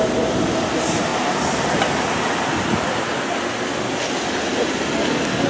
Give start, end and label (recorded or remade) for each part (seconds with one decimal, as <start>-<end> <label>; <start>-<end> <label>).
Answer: 0.0-1.1 recorded; 1.1-3.4 remade; 3.4-5.5 recorded